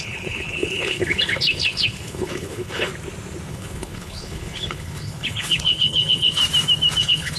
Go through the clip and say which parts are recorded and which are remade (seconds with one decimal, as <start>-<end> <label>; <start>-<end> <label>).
0.0-2.9 remade; 2.9-3.5 recorded; 3.5-6.4 remade; 6.4-7.0 recorded; 7.0-7.4 remade